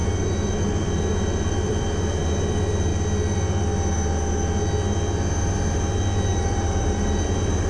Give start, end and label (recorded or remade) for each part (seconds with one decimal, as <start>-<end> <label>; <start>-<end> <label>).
0.0-2.9 remade; 2.9-6.4 recorded; 6.4-7.7 remade